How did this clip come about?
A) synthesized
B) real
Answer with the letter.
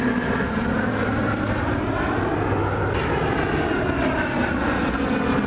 B